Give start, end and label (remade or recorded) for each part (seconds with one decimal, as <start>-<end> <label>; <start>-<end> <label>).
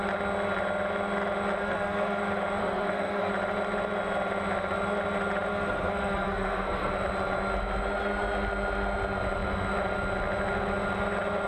0.0-1.6 recorded; 1.6-2.2 remade; 2.2-2.6 recorded; 2.6-3.3 remade; 3.3-5.5 recorded; 5.5-6.9 remade; 6.9-11.5 recorded